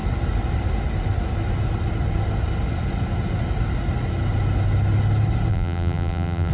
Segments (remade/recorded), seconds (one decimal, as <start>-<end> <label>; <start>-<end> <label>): 0.0-5.5 recorded; 5.5-6.5 remade